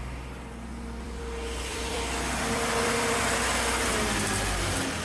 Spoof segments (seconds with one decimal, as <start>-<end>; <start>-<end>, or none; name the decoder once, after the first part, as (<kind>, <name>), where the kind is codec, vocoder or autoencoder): 0.7-1.2 (vocoder, BigVGAN v2); 1.7-4.0